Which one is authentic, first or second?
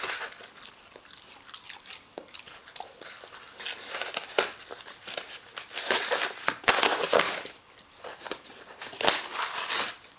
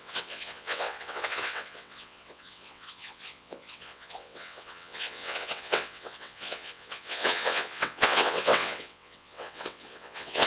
first